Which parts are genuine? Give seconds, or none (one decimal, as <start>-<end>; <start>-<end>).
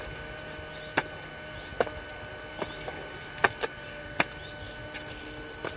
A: 0.0-5.8